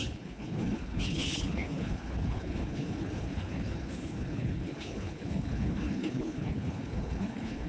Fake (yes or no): yes